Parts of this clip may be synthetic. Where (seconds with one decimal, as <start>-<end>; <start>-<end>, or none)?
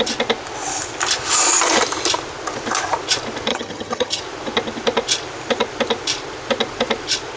3.5-4.2